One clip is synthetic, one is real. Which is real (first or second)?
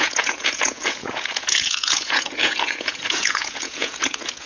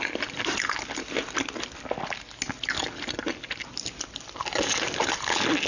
second